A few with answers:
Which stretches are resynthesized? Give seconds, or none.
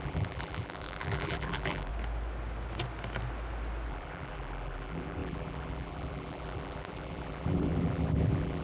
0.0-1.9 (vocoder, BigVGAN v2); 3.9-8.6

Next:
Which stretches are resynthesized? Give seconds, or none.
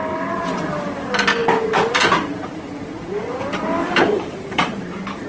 3.8-4.8 (vocoder, BigVGAN v2)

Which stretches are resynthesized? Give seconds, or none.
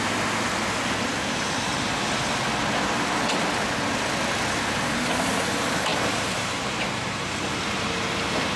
5.9-7.4 (vocoder, BigVGAN v2)